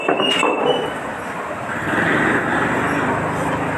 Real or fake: real